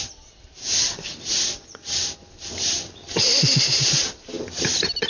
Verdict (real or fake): real